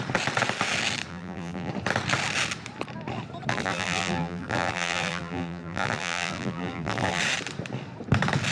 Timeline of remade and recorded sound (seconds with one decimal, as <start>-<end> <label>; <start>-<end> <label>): 0.0-1.1 recorded; 1.1-1.7 remade; 1.7-3.5 recorded; 3.5-7.2 remade; 7.2-8.5 recorded